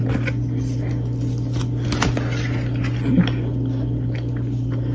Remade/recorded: recorded